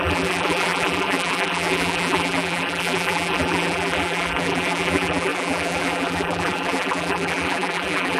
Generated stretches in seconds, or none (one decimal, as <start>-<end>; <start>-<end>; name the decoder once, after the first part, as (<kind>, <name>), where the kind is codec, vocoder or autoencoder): 0.0-8.2 (vocoder, BigVGAN v2)